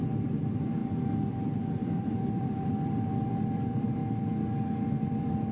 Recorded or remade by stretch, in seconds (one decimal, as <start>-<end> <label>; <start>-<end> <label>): 0.0-0.8 remade; 0.8-1.3 recorded; 1.3-4.0 remade; 4.0-4.8 recorded; 4.8-5.5 remade